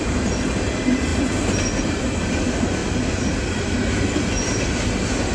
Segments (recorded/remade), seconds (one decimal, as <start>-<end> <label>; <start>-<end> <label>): 0.0-5.3 recorded